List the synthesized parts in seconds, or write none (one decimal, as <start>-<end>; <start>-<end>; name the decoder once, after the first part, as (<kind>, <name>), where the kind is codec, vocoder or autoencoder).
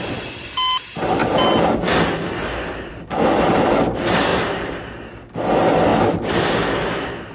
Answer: none